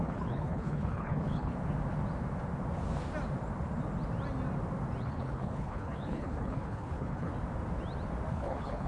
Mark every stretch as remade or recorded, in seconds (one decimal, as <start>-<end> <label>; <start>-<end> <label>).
0.0-1.5 remade; 1.5-5.0 recorded; 5.0-7.3 remade; 7.3-8.3 recorded; 8.3-8.9 remade